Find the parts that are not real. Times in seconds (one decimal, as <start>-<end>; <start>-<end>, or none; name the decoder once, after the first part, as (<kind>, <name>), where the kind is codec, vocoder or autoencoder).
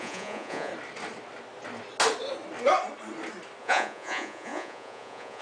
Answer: 0.0-0.7 (vocoder, Vocos); 3.6-5.4